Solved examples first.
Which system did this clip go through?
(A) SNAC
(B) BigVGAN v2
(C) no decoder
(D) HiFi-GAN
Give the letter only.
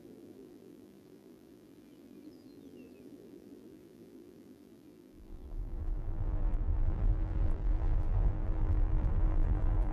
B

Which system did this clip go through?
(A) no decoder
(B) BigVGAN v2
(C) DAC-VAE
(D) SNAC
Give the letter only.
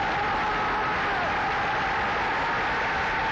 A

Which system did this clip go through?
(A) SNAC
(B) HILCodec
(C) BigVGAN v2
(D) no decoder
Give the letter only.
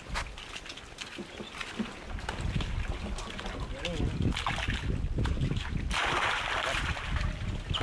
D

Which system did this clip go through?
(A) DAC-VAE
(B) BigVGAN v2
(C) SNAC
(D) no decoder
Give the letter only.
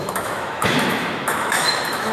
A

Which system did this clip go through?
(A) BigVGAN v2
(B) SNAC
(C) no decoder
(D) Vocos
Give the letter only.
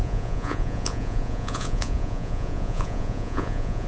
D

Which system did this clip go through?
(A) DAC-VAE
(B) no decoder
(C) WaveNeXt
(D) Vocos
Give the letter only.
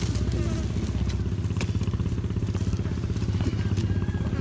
B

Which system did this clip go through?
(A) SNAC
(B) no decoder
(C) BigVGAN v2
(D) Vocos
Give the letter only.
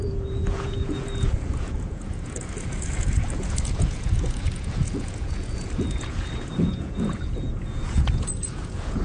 D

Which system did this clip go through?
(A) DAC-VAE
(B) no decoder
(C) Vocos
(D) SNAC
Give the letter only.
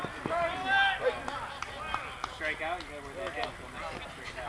B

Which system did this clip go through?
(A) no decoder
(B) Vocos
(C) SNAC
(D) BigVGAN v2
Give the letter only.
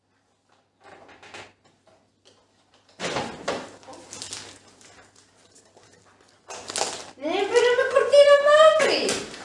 A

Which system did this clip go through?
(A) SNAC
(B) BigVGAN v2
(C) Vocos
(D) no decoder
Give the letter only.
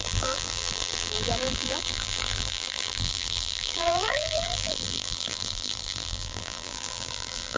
B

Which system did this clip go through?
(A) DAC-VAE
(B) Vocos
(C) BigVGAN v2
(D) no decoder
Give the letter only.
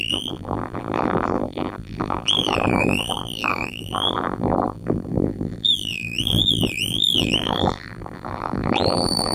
C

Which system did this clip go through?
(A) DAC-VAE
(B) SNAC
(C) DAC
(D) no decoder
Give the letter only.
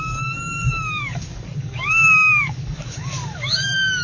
C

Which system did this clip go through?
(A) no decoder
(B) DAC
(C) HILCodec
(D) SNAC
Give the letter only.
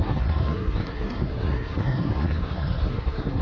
D